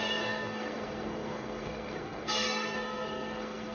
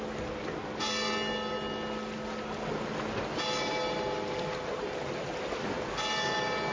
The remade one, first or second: first